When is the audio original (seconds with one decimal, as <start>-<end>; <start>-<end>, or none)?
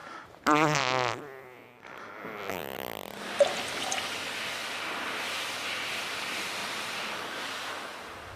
0.8-6.6; 7.5-8.4